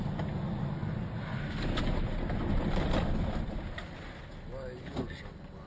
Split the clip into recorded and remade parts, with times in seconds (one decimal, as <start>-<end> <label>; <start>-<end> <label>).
0.0-5.7 recorded